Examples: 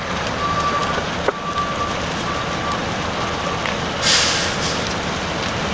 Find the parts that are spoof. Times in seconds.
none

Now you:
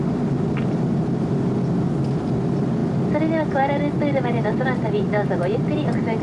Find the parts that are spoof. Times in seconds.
none

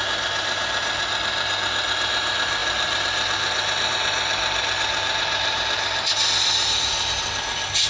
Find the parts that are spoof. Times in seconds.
none

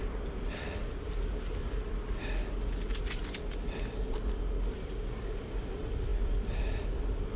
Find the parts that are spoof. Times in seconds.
none

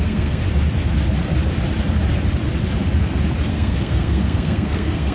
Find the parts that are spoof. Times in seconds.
0.0-0.4 (codec, SNAC); 3.5-5.1

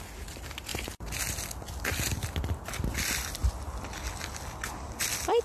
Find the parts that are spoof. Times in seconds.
none

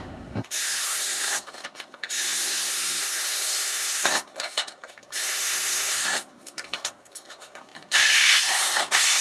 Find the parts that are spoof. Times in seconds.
0.0-9.2 (codec, SNAC)